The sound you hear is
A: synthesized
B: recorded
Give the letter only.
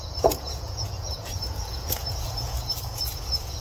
A